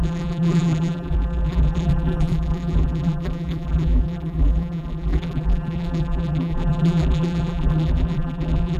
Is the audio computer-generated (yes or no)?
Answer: yes